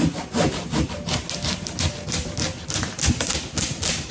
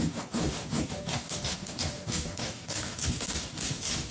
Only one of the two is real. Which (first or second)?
first